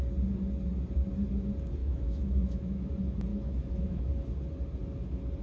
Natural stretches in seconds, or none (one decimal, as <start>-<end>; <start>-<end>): 0.0-1.8; 2.9-3.3; 4.1-5.4

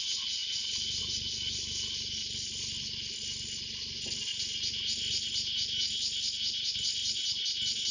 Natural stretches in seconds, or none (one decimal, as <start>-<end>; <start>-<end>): 0.0-7.9

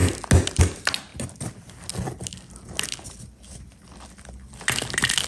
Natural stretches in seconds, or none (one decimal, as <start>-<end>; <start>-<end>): 0.0-5.3